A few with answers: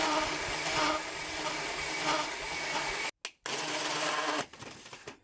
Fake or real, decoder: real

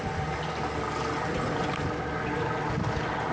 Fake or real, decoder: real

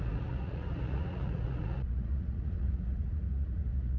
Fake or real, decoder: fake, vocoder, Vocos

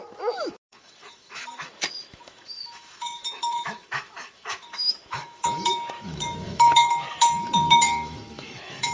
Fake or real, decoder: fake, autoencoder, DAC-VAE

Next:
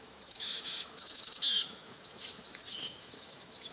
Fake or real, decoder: fake, autoencoder, DAC-VAE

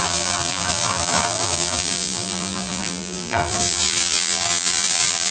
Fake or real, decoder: fake, vocoder, BigVGAN v2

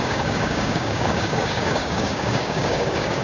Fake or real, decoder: fake, codec, DAC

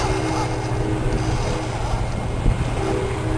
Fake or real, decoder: real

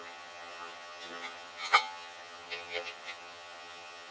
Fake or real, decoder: fake, vocoder, HiFi-GAN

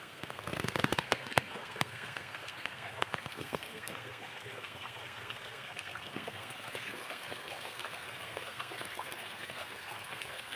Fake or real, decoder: fake, codec, SNAC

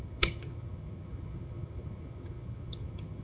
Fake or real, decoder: fake, vocoder, HiFi-GAN